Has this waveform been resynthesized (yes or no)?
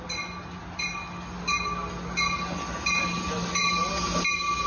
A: no